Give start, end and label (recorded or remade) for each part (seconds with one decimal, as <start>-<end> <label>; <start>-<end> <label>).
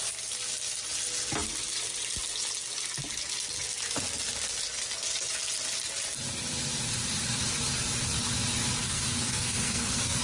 0.0-8.8 recorded; 8.8-10.2 remade